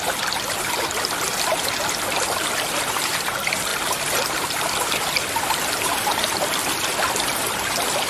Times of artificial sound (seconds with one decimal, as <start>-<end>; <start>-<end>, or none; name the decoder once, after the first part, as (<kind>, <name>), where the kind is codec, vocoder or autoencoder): 3.7-5.9 (vocoder, BigVGAN v2)

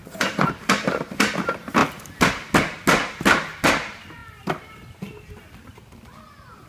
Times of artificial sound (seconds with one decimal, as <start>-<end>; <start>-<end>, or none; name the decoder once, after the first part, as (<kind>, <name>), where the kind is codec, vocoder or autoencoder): 0.0-1.3 (vocoder, BigVGAN v2)

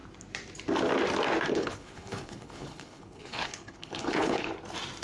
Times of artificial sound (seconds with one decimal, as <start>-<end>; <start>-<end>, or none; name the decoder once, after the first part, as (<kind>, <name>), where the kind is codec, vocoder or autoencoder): 1.5-4.5 (codec, HILCodec)